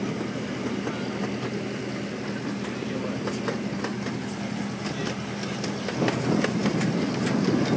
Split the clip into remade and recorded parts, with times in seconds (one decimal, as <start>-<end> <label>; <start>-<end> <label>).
0.0-7.8 recorded